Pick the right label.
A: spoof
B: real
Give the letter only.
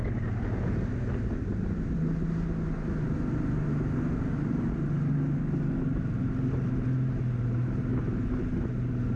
B